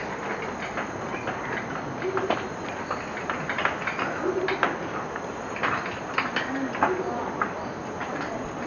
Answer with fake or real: real